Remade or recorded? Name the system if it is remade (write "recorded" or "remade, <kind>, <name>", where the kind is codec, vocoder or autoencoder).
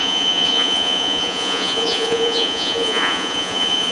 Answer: remade, vocoder, Vocos